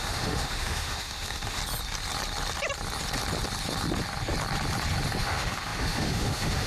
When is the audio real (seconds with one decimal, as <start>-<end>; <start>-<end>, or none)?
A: 1.6-5.2